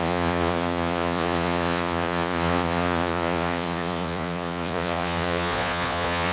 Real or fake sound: fake